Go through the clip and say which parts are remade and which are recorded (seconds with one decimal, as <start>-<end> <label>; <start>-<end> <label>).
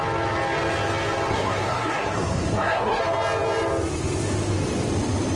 0.0-1.3 recorded; 1.3-3.0 remade; 3.0-5.4 recorded